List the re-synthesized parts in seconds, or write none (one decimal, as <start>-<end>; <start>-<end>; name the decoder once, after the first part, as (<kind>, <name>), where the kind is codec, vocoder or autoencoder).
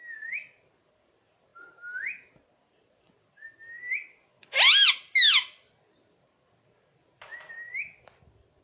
none